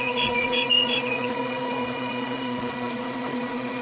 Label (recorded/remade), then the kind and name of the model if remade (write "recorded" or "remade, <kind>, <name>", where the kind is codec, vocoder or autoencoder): remade, vocoder, Vocos